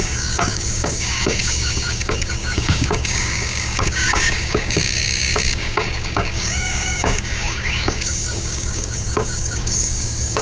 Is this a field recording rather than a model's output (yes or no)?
no